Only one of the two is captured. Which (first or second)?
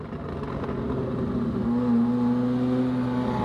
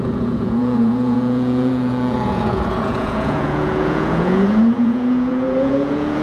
first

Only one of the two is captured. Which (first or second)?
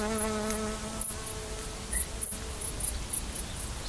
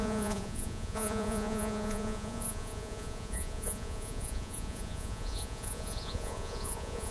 first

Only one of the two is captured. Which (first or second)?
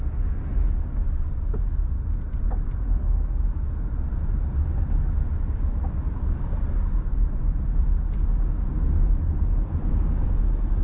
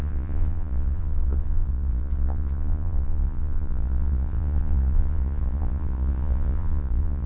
first